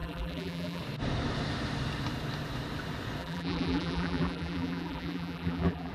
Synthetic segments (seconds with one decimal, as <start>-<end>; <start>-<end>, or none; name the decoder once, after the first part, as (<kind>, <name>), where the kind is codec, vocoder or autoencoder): 0.0-0.8 (vocoder, BigVGAN v2); 3.2-5.9